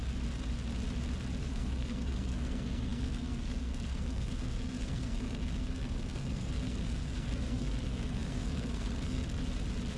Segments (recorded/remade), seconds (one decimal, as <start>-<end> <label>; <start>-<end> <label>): 0.0-1.4 recorded; 1.4-9.2 remade; 9.2-10.0 recorded